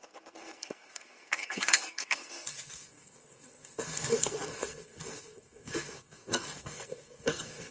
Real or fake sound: fake